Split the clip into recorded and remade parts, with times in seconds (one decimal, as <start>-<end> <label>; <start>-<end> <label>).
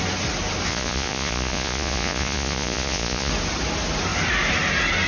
0.0-0.7 recorded; 0.7-3.3 remade; 3.3-5.1 recorded